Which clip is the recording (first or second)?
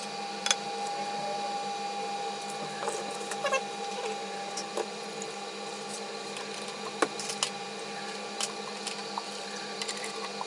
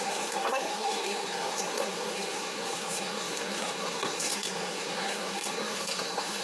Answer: first